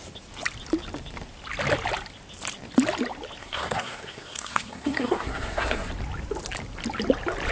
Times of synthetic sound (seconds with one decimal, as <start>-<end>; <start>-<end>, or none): 3.4-5.9

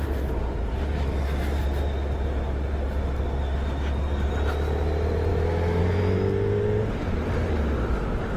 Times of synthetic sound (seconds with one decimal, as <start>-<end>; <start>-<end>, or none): 5.3-5.8